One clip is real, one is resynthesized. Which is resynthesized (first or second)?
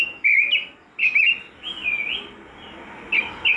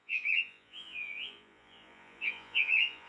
second